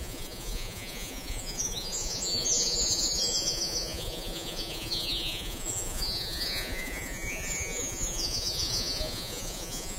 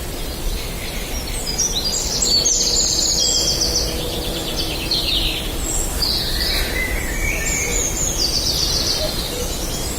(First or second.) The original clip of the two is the second